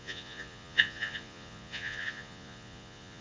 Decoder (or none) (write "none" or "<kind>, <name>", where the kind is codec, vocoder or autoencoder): vocoder, Vocos